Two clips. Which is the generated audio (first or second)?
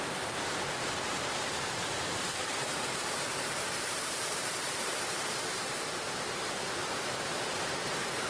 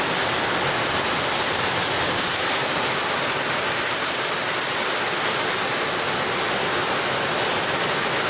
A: first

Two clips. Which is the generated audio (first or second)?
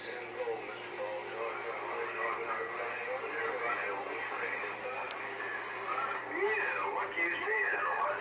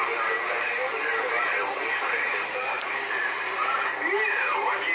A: second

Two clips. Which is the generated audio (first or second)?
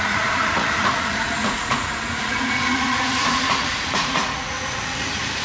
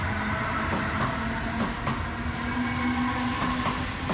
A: first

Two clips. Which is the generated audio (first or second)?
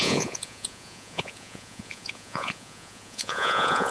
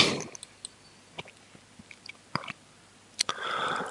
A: first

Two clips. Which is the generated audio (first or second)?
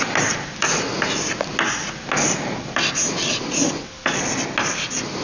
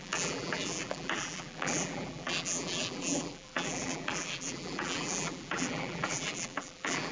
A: second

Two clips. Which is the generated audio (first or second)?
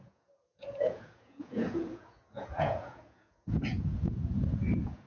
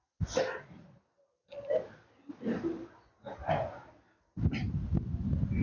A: first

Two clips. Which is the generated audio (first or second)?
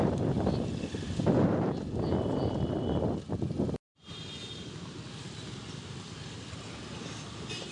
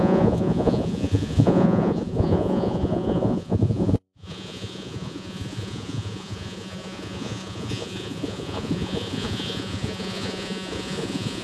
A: second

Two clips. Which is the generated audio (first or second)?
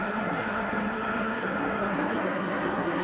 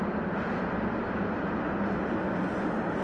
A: first